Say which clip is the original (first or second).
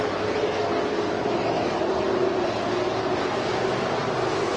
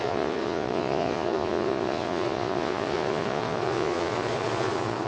first